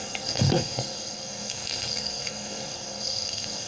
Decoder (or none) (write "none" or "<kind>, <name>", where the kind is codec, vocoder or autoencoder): codec, SNAC